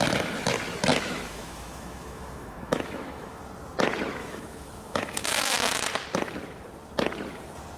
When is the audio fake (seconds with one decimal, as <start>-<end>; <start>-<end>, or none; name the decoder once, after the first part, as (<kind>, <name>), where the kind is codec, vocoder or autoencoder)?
0.9-3.4 (autoencoder, DAC-VAE); 4.2-5.8